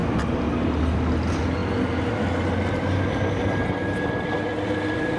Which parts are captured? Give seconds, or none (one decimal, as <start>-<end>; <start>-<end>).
0.0-5.2